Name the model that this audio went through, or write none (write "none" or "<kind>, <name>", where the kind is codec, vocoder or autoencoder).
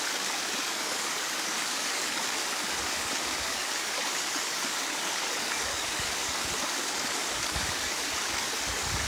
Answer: codec, DAC